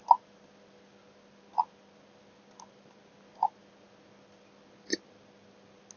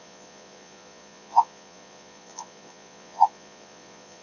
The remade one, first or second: second